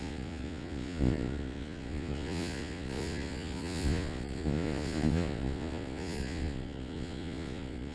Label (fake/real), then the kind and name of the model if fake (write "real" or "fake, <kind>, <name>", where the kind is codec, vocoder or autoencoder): fake, vocoder, Vocos